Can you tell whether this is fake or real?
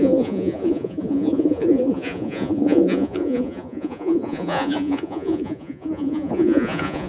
fake